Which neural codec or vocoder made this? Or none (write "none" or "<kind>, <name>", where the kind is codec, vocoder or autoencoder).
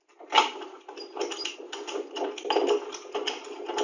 none